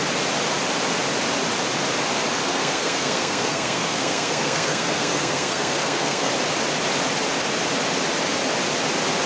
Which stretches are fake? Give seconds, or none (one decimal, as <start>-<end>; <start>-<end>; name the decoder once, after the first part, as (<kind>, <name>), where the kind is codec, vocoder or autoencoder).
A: 2.5-6.3 (codec, SNAC)